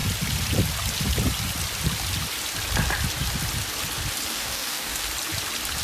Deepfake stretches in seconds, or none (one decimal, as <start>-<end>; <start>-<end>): 4.3-5.0